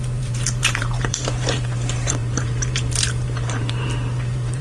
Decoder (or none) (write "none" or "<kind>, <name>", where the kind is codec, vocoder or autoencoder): vocoder, BigVGAN v2